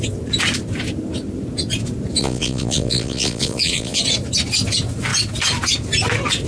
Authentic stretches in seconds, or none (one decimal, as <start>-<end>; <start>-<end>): 0.0-2.2; 4.0-6.5